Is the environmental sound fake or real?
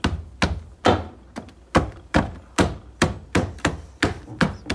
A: real